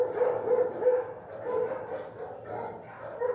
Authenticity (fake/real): real